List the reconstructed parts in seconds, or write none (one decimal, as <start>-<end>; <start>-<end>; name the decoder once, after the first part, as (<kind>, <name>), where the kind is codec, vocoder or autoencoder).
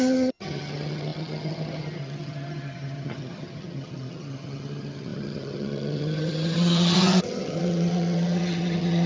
0.0-9.1 (vocoder, HiFi-GAN)